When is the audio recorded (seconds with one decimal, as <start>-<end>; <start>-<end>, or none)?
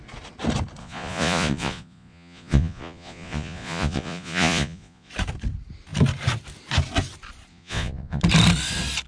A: 0.0-0.8; 5.1-7.5; 8.2-9.1